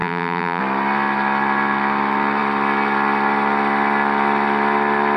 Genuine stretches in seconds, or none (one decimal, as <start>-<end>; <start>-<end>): 0.6-5.2